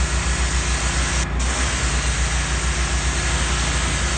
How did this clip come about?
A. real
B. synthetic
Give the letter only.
A